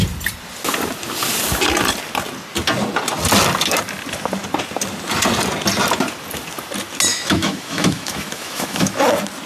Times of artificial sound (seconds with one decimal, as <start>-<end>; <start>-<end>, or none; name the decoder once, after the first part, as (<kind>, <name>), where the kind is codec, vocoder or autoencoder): 7.1-9.0 (autoencoder, DAC-VAE)